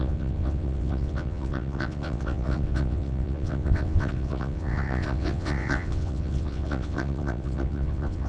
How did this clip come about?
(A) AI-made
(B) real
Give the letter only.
A